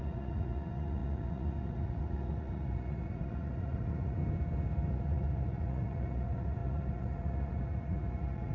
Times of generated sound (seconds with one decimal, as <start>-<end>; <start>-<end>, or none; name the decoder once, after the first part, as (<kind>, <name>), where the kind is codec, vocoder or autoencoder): 0.0-4.2 (vocoder, Vocos); 4.9-8.5